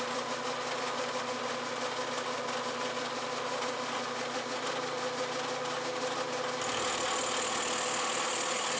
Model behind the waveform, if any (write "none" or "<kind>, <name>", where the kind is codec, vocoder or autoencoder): none